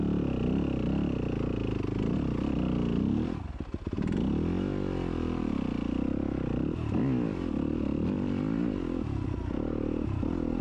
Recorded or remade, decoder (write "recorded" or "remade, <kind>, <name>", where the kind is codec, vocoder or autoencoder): recorded